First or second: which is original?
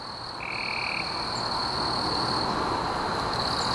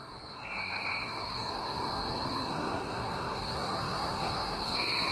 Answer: first